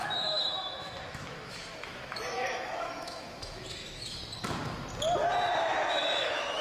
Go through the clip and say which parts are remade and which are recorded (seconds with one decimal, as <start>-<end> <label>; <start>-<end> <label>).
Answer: 0.0-4.2 remade; 4.2-5.6 recorded; 5.6-6.6 remade